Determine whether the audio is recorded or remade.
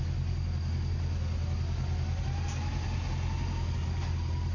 recorded